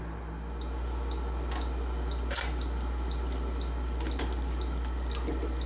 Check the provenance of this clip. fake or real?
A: real